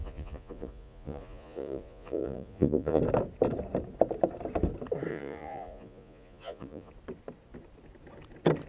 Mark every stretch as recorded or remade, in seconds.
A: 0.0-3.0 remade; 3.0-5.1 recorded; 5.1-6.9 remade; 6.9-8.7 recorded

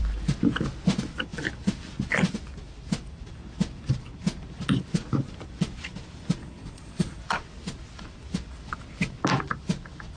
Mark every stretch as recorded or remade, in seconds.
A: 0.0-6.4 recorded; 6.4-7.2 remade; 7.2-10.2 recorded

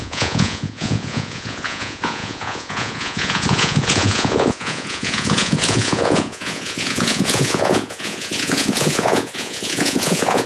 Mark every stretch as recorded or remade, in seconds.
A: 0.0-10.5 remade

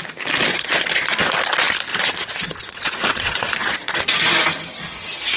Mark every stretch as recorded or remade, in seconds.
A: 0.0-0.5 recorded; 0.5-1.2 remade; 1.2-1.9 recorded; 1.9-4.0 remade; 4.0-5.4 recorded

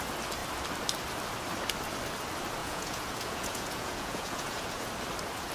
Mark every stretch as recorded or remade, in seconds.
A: 0.0-2.6 recorded; 2.6-4.9 remade; 4.9-5.5 recorded